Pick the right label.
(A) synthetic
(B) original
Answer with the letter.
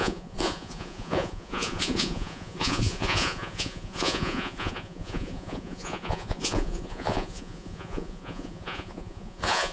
A